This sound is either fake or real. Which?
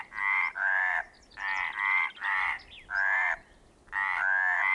real